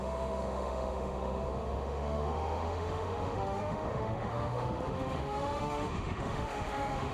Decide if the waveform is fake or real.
fake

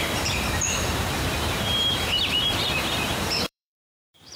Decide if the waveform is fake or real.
fake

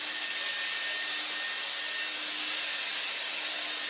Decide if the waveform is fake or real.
real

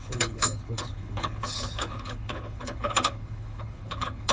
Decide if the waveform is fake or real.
fake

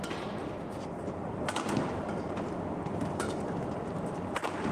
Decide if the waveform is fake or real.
fake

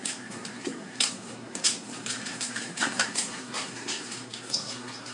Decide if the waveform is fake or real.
fake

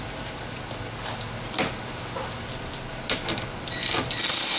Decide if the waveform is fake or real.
real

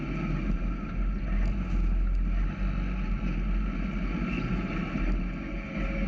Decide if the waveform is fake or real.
real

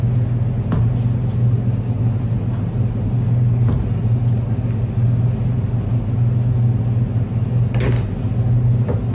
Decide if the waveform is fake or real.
real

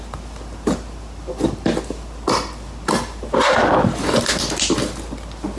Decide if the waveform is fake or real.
real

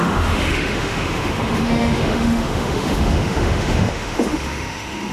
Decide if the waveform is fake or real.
fake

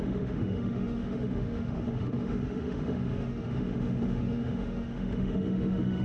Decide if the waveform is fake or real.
fake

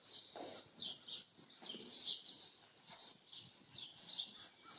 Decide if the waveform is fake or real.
real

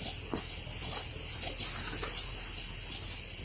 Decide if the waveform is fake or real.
real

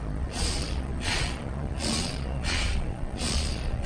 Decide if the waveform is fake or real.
fake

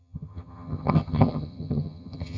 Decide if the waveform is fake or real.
fake